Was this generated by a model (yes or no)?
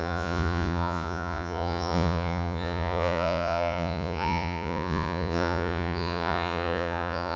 yes